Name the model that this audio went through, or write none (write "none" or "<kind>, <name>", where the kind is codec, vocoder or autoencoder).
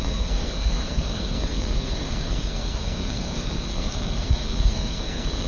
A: codec, SNAC